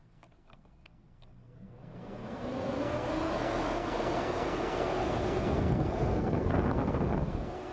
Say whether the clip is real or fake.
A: fake